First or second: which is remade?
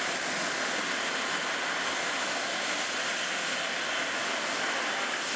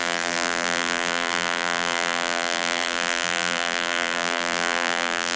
second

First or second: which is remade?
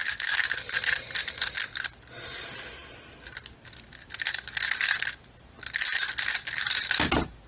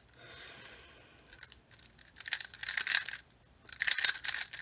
second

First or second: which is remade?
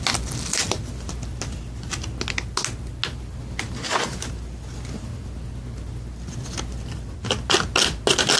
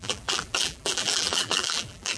second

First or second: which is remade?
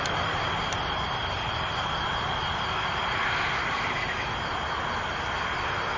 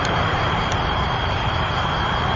second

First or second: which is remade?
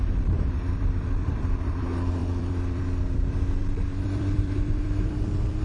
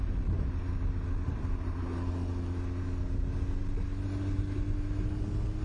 first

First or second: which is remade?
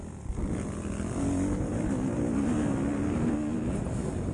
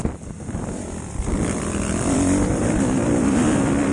second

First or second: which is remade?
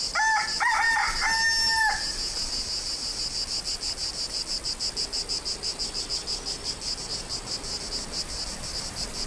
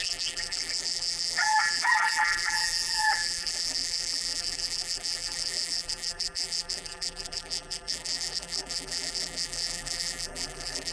second